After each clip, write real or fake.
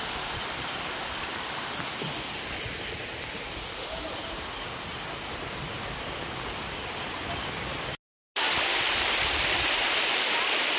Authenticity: real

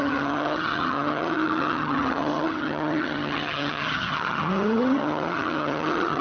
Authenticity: fake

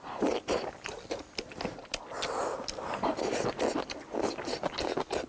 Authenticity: real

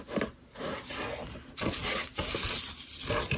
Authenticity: real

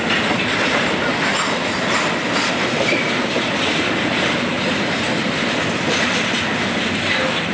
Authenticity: real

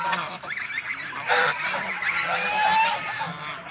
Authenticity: real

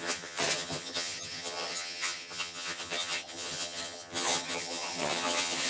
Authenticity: fake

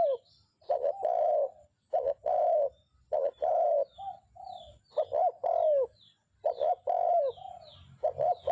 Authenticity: real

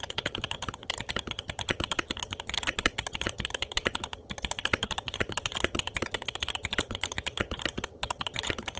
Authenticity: fake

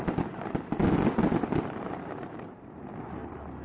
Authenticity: real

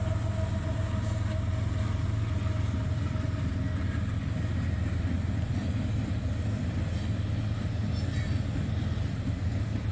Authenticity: real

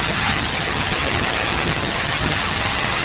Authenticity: fake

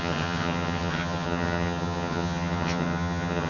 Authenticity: fake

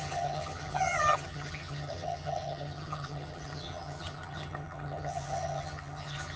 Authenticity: fake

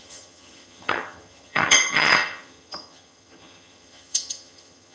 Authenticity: fake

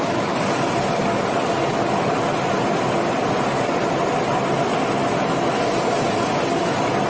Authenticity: real